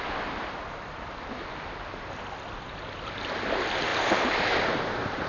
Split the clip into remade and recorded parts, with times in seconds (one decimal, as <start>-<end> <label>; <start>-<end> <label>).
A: 0.0-3.9 recorded; 3.9-4.8 remade; 4.8-5.3 recorded